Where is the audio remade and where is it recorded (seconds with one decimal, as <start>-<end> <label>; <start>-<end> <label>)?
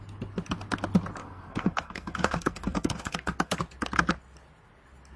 0.0-1.2 recorded; 1.2-3.6 remade; 3.6-5.2 recorded